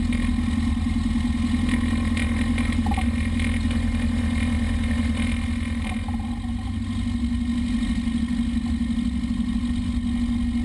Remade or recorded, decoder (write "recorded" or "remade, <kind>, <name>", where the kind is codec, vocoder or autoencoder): recorded